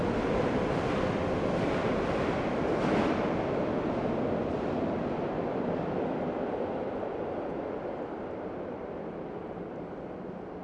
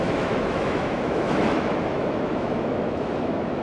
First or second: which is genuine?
first